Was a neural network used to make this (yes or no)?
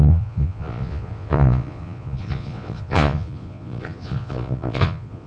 yes